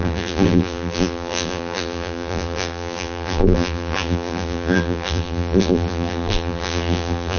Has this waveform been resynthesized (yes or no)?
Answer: yes